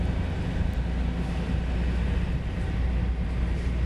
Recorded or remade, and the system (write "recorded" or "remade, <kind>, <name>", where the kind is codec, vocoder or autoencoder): recorded